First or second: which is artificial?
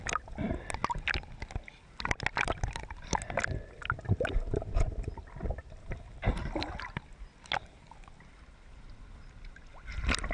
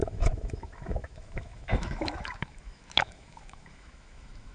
second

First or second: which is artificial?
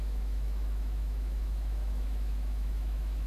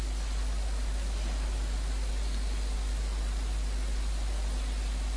first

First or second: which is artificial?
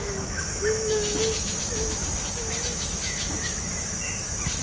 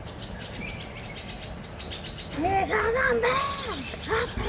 first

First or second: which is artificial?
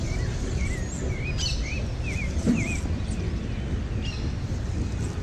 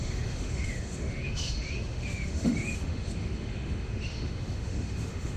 second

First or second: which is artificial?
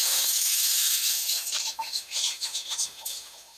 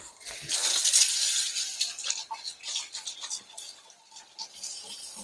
first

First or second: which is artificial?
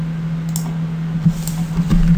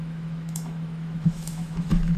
second